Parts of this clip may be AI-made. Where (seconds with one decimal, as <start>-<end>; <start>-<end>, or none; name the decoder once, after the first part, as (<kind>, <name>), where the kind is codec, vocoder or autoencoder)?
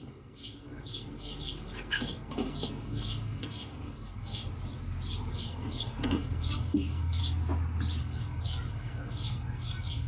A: 0.0-4.4 (codec, SNAC); 5.3-7.2; 8.0-10.1